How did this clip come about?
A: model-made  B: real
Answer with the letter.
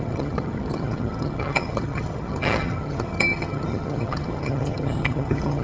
A